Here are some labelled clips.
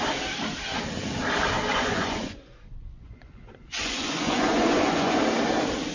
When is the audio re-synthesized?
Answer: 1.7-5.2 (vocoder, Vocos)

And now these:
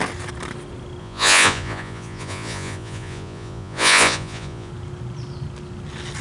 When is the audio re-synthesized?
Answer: 1.0-4.7 (vocoder, Vocos)

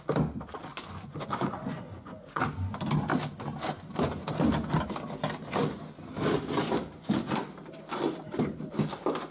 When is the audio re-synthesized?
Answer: 0.7-2.4 (vocoder, Vocos)

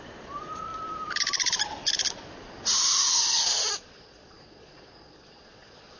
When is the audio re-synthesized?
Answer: 0.0-0.7 (vocoder, Vocos); 3.2-6.0

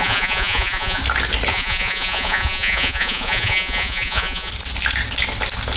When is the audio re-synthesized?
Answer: 0.0-1.0 (vocoder, Vocos); 1.5-4.5

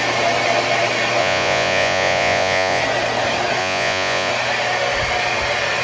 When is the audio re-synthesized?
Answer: 1.2-2.8 (vocoder, Vocos); 3.6-4.3